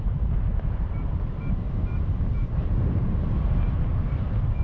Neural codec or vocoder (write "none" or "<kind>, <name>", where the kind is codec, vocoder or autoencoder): vocoder, BigVGAN v2